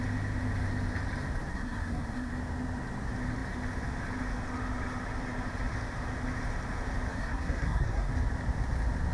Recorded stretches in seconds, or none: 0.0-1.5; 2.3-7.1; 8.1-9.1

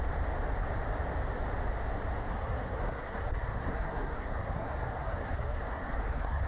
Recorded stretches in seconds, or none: 0.0-2.3

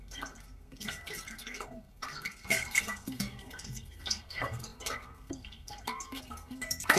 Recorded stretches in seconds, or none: none

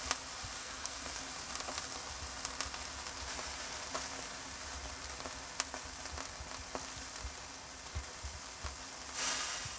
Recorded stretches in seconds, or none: 0.0-0.6; 1.2-9.8

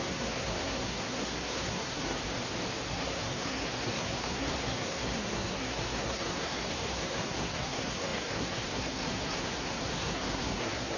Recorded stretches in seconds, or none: 2.2-2.9

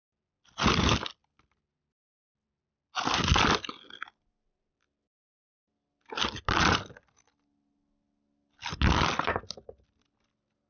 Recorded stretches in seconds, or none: 0.0-10.7

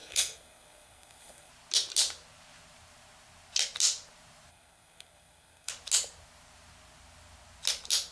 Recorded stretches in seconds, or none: 1.5-4.5; 5.7-8.1